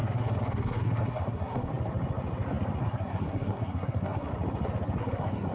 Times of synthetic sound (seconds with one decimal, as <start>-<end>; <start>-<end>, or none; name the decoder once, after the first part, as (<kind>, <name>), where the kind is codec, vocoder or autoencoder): 0.0-1.7 (codec, SNAC); 2.8-4.3; 5.0-5.5

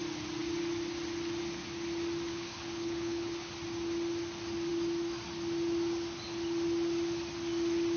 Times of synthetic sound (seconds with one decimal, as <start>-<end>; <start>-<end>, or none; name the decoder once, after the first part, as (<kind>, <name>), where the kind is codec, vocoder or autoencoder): 2.3-3.5 (codec, HILCodec)

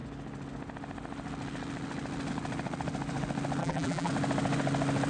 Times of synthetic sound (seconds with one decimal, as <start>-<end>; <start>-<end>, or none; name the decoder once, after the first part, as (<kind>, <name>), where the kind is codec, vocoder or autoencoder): 3.6-4.1 (vocoder, BigVGAN v2)

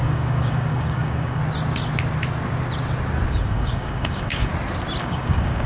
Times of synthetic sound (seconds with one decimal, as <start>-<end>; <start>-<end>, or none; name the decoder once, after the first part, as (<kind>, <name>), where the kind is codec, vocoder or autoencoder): 0.0-1.4 (codec, DAC); 3.3-4.5; 5.0-5.7

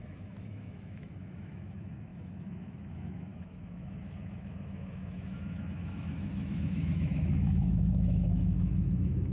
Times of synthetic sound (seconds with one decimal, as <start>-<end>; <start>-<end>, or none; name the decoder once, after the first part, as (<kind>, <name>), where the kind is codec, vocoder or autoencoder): 0.0-9.3 (autoencoder, DAC-VAE)